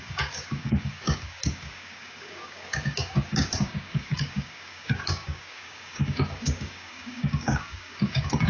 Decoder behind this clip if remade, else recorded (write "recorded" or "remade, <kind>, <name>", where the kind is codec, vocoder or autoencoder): remade, codec, DAC